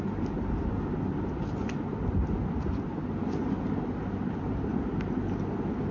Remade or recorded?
recorded